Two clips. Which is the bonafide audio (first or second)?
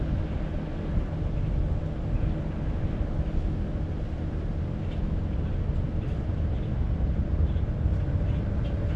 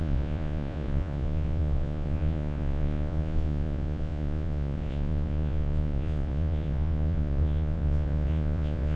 first